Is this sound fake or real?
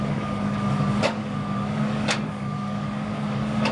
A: fake